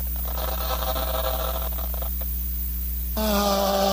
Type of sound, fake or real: real